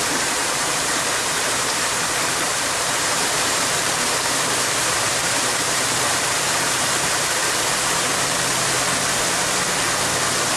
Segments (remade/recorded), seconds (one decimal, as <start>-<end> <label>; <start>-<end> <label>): 0.0-8.1 remade; 8.1-10.6 recorded